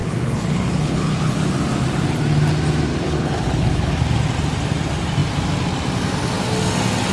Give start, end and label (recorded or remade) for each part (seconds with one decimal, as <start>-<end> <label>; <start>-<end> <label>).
0.0-1.5 remade; 1.5-2.9 recorded; 2.9-3.9 remade; 3.9-7.1 recorded